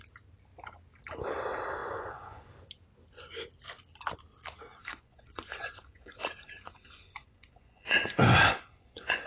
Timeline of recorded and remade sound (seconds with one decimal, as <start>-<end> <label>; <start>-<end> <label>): 0.0-1.8 recorded; 1.8-2.5 remade; 2.5-4.8 recorded; 4.8-9.3 remade